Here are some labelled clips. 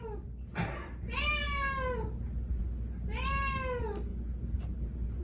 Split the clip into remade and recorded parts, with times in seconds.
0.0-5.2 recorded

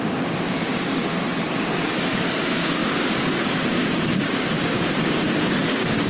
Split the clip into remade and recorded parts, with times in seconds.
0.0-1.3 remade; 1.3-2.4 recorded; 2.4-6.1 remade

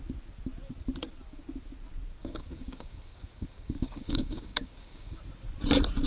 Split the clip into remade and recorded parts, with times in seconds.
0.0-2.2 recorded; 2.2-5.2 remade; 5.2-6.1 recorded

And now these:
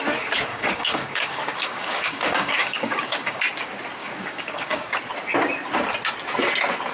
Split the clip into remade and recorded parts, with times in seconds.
0.0-0.5 recorded; 0.5-3.4 remade; 3.4-4.0 recorded; 4.0-4.9 remade; 4.9-6.9 recorded

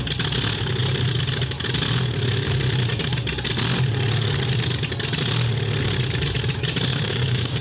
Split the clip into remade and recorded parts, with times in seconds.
0.0-6.9 recorded; 6.9-7.6 remade